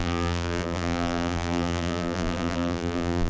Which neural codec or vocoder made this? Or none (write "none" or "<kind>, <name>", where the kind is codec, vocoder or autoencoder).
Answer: vocoder, BigVGAN v2